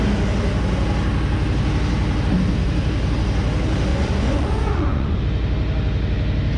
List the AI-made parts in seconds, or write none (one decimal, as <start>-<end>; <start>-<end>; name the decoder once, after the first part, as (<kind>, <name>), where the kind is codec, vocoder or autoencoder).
3.9-5.2 (vocoder, Vocos)